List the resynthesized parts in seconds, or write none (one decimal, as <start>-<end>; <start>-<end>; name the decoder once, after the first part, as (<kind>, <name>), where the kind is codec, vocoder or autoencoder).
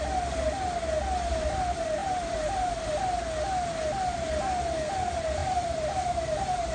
2.0-3.0 (vocoder, BigVGAN v2); 5.4-6.7